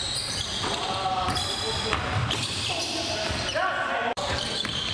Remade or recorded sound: remade